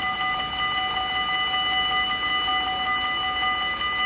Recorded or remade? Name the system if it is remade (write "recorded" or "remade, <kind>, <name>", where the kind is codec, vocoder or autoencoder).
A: recorded